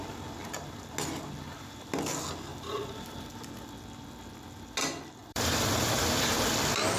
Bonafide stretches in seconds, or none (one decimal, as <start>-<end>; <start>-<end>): 0.0-2.5; 3.5-5.2; 6.5-7.0